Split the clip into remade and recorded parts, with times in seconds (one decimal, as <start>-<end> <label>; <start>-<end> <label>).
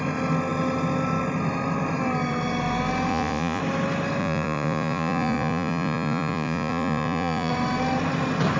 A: 0.0-3.1 recorded; 3.1-3.6 remade; 3.6-4.2 recorded; 4.2-7.5 remade; 7.5-8.6 recorded